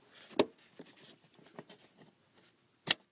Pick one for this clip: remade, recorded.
recorded